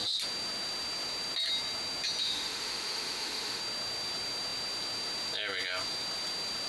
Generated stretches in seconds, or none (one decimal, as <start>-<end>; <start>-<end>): 2.2-3.6